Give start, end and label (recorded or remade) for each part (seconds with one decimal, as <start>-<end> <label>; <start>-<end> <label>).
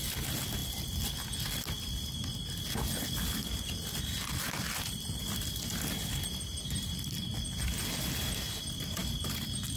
0.0-9.8 recorded